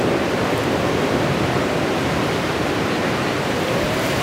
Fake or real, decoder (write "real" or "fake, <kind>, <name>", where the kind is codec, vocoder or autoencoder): fake, vocoder, BigVGAN v2